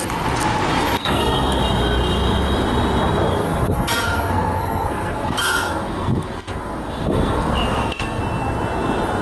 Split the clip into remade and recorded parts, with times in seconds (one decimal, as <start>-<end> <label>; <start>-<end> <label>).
0.0-1.0 recorded; 1.0-1.6 remade; 1.6-3.3 recorded; 3.3-8.2 remade; 8.2-9.2 recorded